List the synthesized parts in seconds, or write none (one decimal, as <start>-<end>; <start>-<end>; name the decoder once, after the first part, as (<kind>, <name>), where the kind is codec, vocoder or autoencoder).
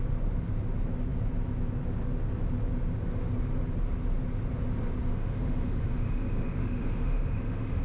5.1-7.8 (autoencoder, DAC-VAE)